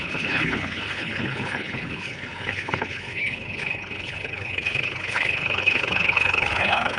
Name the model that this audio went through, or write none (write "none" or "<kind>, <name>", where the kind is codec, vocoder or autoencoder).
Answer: codec, HILCodec